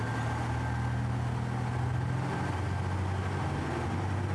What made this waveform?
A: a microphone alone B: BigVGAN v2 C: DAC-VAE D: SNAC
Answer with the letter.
A